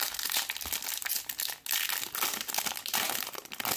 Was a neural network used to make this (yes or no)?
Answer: no